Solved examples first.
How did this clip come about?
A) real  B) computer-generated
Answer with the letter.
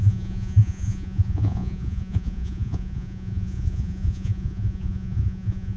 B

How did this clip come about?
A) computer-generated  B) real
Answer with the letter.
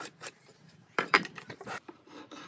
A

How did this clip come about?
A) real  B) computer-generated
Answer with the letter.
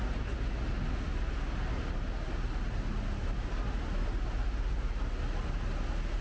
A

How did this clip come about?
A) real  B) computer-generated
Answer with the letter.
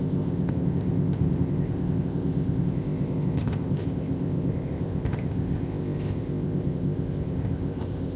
B